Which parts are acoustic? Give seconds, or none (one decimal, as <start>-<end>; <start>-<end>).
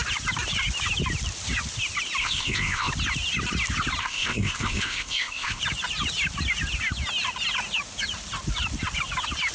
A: 0.0-2.2; 2.9-4.0; 5.6-9.5